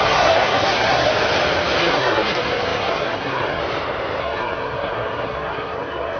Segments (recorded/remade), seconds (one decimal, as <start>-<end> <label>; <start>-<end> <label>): 0.0-1.1 remade; 1.1-1.8 recorded; 1.8-3.6 remade; 3.6-4.2 recorded; 4.2-6.2 remade